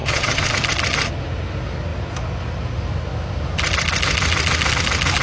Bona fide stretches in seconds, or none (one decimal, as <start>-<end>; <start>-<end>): 0.5-5.2